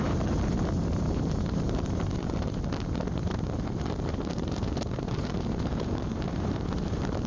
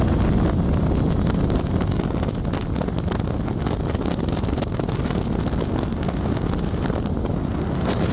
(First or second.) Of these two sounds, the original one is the second